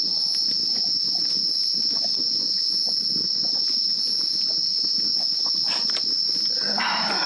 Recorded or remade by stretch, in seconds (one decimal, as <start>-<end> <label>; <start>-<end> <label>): 0.0-7.3 recorded

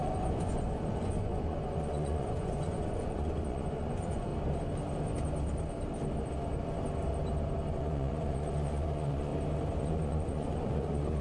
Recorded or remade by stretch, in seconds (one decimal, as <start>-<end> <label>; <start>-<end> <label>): 0.0-4.3 remade; 4.3-7.7 recorded; 7.7-9.3 remade; 9.3-9.8 recorded; 9.8-11.2 remade

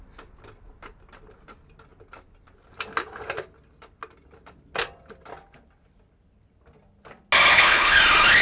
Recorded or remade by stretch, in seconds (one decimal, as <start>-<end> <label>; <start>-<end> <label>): 0.0-7.5 recorded; 7.5-8.0 remade; 8.0-8.4 recorded

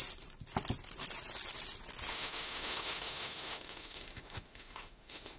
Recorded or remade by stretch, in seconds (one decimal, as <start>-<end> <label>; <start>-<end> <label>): 0.0-2.1 recorded; 2.1-5.4 remade